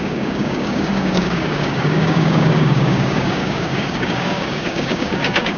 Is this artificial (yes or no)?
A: yes